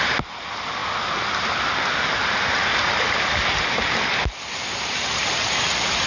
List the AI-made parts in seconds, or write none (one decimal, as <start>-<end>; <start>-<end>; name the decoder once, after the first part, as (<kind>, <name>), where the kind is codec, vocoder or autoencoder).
none